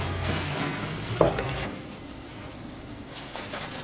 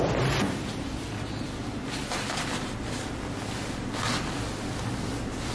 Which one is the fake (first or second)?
first